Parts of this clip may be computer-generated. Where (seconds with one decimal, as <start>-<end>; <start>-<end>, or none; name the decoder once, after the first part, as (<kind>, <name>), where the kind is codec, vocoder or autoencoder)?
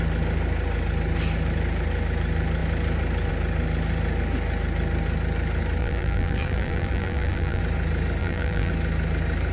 5.8-7.6 (vocoder, BigVGAN v2); 8.2-8.7